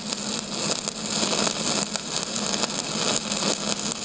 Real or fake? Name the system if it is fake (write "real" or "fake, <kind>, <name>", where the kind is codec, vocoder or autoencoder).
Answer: real